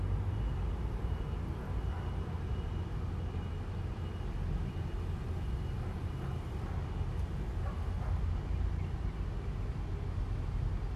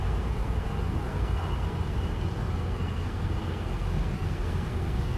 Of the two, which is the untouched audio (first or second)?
first